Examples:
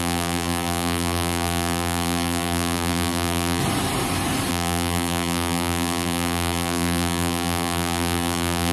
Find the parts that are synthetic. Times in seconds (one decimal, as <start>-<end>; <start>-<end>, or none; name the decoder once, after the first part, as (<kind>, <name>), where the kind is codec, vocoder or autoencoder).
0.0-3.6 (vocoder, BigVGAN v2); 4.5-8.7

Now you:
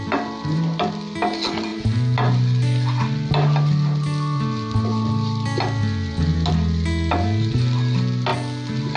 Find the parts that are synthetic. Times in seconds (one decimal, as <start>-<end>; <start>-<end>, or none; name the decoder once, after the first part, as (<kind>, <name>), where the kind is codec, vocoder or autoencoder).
none

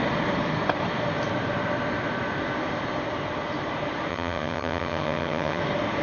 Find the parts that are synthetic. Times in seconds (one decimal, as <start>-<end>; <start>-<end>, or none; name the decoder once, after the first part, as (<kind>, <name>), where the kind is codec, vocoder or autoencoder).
4.1-5.6 (vocoder, HiFi-GAN)

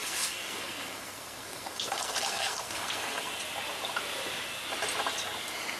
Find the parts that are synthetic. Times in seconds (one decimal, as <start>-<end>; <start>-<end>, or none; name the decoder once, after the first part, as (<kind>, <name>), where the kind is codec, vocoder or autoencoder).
0.0-3.3 (codec, SNAC)

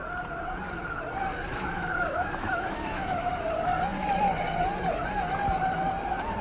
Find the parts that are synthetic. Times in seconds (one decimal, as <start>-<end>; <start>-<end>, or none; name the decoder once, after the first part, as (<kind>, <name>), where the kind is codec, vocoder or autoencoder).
1.5-3.3 (autoencoder, DAC-VAE)